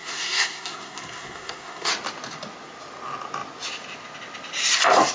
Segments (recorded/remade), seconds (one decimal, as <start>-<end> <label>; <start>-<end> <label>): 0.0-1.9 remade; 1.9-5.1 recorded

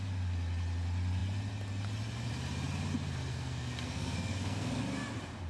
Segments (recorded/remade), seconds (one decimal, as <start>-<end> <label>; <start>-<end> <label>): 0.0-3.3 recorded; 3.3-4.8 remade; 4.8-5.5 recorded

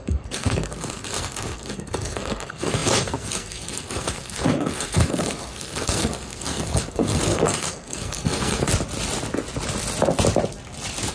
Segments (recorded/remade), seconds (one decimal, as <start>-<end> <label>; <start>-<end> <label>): 0.0-8.7 remade; 8.7-11.1 recorded